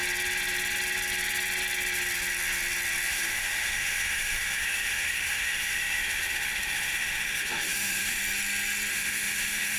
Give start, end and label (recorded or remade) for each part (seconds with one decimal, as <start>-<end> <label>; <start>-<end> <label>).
0.0-3.1 recorded; 3.1-8.2 remade; 8.2-8.9 recorded; 8.9-9.8 remade

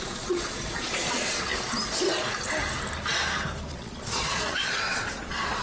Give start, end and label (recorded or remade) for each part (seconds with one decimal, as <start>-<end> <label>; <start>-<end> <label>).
0.0-1.5 remade; 1.5-3.7 recorded; 3.7-5.6 remade

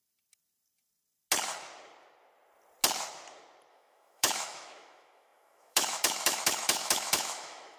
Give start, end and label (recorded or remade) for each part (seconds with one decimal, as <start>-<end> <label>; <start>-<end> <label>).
0.0-3.7 recorded; 3.7-7.8 remade

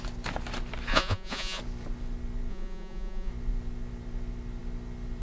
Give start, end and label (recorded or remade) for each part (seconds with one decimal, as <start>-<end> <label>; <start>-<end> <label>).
0.0-0.9 recorded; 0.9-1.6 remade; 1.6-2.5 recorded; 2.5-3.3 remade; 3.3-5.2 recorded

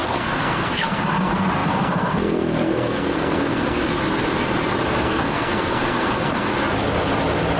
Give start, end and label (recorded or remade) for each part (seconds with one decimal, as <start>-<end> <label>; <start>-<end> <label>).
0.0-3.9 remade; 3.9-5.0 recorded; 5.0-6.5 remade; 6.5-7.6 recorded

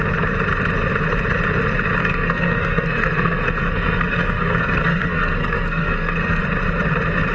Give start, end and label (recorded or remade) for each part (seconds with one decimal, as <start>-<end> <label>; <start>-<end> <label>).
0.0-2.0 recorded; 2.0-6.4 remade; 6.4-7.3 recorded